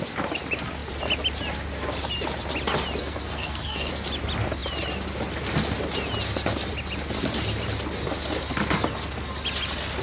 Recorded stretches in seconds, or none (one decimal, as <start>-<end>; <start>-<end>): 0.0-3.0; 3.9-10.0